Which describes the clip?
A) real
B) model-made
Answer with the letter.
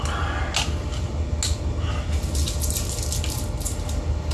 A